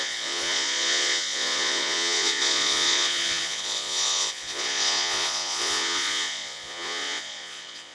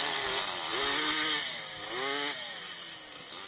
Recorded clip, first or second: second